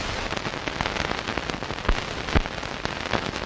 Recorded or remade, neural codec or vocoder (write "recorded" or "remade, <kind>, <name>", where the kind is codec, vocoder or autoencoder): recorded